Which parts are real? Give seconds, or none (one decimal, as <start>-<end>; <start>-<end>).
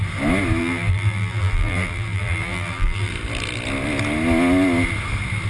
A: 0.0-0.6; 3.1-5.5